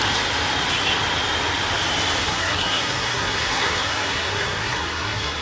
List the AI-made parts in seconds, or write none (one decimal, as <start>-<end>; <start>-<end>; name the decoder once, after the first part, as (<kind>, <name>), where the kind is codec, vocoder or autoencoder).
2.2-5.4 (codec, SNAC)